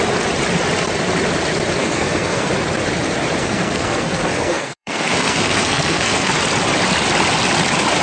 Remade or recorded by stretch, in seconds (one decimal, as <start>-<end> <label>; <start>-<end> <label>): 0.0-1.8 recorded; 1.8-2.5 remade; 2.5-3.4 recorded; 3.4-6.3 remade; 6.3-8.0 recorded